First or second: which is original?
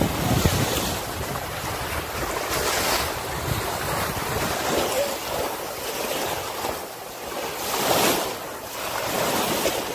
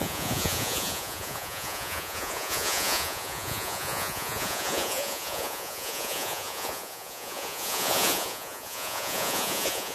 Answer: first